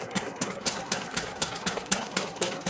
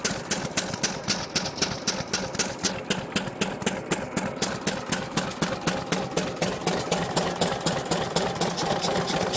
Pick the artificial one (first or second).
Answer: first